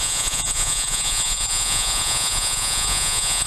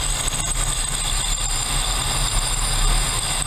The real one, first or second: second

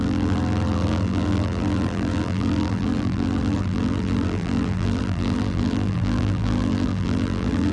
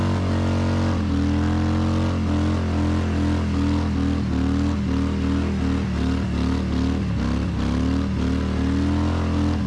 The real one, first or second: second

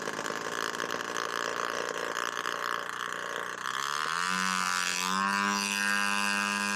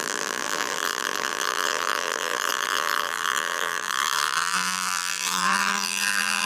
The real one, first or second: first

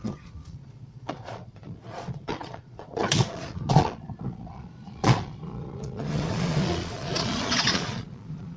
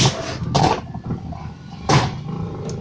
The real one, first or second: second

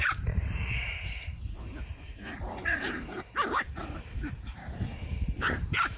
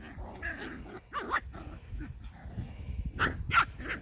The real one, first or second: second